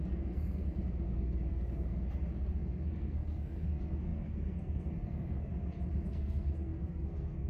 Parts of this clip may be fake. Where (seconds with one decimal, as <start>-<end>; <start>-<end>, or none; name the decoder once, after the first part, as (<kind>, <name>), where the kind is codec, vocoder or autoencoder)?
0.0-5.5 (codec, SNAC); 6.1-7.5